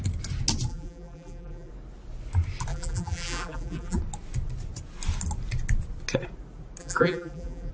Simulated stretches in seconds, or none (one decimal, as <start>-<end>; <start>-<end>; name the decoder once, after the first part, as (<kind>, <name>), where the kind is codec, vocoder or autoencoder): 0.7-1.7 (vocoder, BigVGAN v2); 2.7-4.0; 6.8-7.7